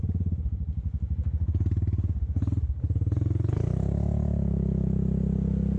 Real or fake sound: real